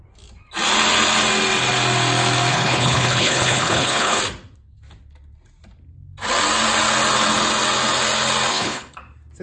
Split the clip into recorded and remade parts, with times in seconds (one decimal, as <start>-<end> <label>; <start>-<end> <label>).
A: 0.0-2.5 recorded; 2.5-4.2 remade; 4.2-8.5 recorded; 8.5-9.0 remade; 9.0-9.4 recorded